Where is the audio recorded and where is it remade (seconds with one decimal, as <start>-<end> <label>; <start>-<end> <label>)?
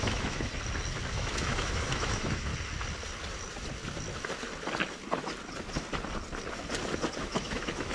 0.0-0.5 remade; 0.5-1.1 recorded; 1.1-2.5 remade; 2.5-7.2 recorded; 7.2-7.9 remade